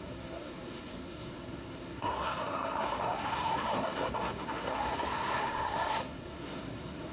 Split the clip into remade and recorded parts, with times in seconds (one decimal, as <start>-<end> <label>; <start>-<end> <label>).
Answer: 0.0-7.1 remade